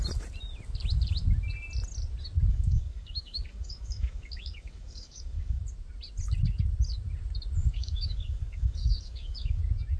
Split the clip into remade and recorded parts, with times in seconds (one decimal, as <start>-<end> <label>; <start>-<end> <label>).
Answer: 0.0-2.5 recorded; 2.5-5.6 remade; 5.6-7.6 recorded; 7.6-9.6 remade; 9.6-10.0 recorded